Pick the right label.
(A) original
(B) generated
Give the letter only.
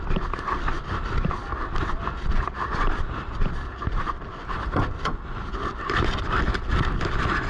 A